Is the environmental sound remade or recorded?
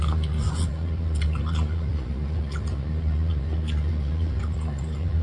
remade